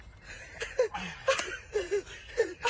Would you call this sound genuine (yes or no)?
no